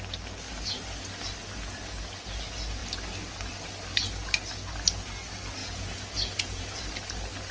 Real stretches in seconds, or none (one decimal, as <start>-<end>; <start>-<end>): 0.0-5.6; 6.9-7.5